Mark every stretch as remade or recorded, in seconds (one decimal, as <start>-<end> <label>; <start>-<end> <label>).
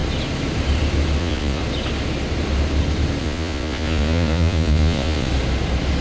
0.0-1.2 recorded; 1.2-1.6 remade; 1.6-3.2 recorded; 3.2-5.3 remade; 5.3-6.0 recorded